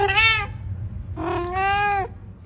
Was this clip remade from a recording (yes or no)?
no